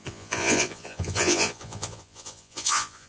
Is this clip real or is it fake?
fake